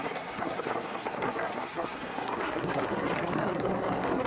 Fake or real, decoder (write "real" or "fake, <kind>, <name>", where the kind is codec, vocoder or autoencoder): fake, codec, SNAC